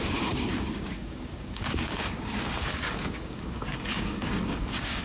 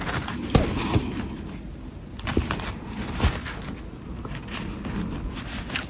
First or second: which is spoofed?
first